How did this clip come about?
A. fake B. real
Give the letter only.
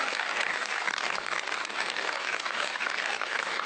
A